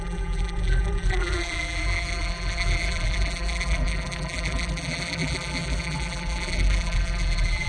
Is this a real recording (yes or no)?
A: no